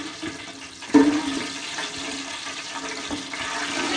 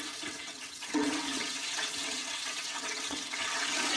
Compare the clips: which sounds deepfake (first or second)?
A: second